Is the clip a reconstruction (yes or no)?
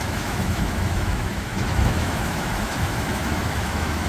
yes